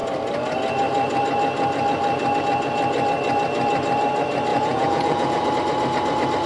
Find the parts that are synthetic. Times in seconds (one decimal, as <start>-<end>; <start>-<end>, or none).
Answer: 4.5-5.5